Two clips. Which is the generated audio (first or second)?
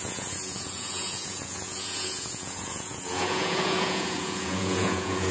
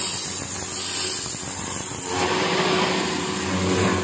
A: first